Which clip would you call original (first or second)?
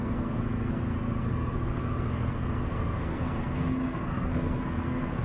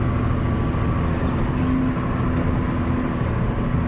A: second